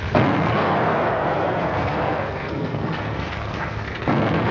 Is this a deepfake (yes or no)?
yes